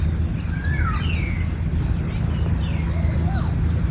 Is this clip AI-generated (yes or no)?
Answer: no